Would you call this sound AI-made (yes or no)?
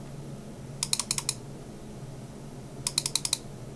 no